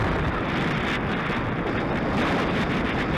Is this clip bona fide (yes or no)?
yes